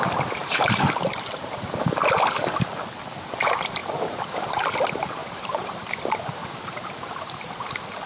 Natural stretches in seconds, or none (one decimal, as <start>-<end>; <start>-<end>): 0.0-0.4; 1.0-3.8; 4.6-5.2; 5.9-6.4; 7.5-8.1

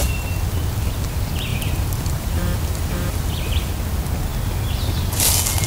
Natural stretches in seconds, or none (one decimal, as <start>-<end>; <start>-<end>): 0.0-1.5; 3.7-5.7